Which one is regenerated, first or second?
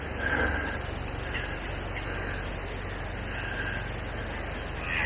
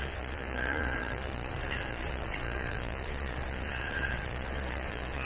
second